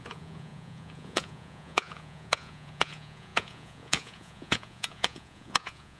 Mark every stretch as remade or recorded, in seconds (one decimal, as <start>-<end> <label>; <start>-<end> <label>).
0.0-6.0 remade